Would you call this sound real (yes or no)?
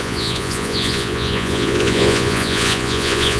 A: no